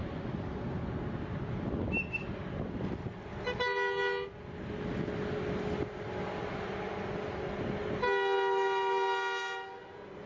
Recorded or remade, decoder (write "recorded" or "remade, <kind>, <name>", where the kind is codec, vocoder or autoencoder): recorded